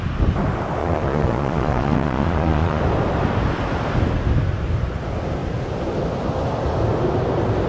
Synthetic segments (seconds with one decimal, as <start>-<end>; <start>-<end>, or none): 0.8-2.8